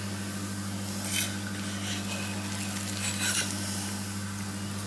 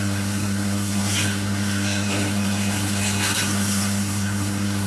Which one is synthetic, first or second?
second